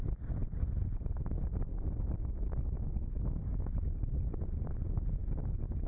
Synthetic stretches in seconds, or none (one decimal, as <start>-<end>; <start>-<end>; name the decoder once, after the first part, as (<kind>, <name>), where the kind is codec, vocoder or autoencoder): 1.7-4.0 (autoencoder, DAC-VAE); 5.2-5.9